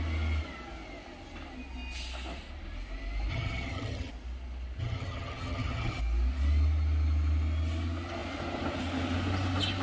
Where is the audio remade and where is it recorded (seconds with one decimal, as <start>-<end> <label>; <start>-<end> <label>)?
0.0-3.3 recorded; 3.3-4.1 remade; 4.1-4.8 recorded; 4.8-6.0 remade; 6.0-9.8 recorded